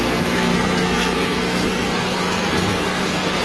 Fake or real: fake